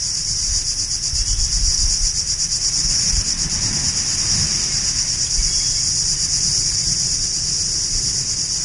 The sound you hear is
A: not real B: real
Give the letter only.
B